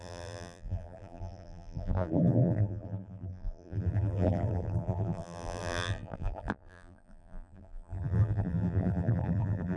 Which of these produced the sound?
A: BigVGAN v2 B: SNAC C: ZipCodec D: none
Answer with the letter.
A